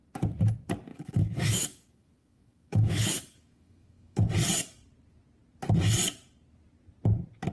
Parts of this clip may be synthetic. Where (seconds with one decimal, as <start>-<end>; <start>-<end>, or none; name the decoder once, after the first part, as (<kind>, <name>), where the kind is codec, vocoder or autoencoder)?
0.9-4.3 (autoencoder, DAC-VAE)